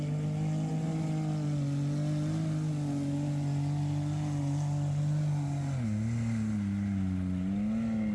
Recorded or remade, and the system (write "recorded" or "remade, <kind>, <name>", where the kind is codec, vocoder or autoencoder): recorded